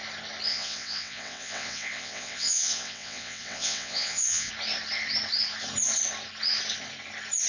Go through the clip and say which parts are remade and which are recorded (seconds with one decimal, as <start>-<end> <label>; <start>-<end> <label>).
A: 0.0-0.5 recorded; 0.5-4.5 remade; 4.5-7.5 recorded